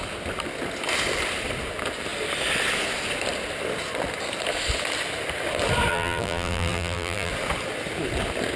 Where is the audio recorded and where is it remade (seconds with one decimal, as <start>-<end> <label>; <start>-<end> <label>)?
0.0-5.9 recorded; 5.9-7.3 remade; 7.3-8.6 recorded